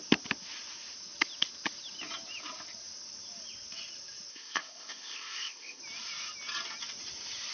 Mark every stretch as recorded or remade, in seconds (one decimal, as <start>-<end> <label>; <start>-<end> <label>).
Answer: 0.0-4.3 recorded; 4.3-5.8 remade; 5.8-7.5 recorded

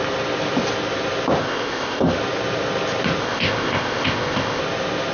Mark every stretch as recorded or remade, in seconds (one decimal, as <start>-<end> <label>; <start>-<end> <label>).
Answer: 0.0-1.4 recorded; 1.4-2.1 remade; 2.1-3.2 recorded; 3.2-4.6 remade; 4.6-5.1 recorded

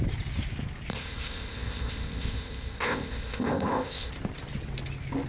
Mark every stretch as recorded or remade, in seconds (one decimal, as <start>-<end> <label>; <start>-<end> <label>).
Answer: 0.0-0.9 recorded; 0.9-4.1 remade; 4.1-5.3 recorded

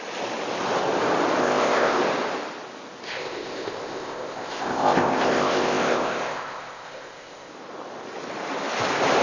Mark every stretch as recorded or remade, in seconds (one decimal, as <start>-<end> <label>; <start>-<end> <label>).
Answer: 0.0-1.4 recorded; 1.4-2.0 remade; 2.0-3.1 recorded; 3.1-7.5 remade; 7.5-9.2 recorded

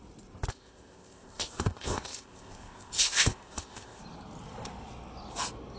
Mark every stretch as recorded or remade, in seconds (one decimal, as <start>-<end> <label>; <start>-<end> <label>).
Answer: 0.0-0.5 recorded; 0.5-4.0 remade; 4.0-5.8 recorded

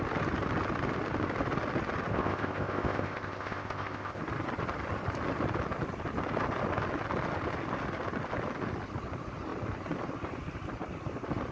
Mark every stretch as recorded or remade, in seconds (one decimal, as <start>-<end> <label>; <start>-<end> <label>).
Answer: 0.0-2.1 recorded; 2.1-4.2 remade; 4.2-11.5 recorded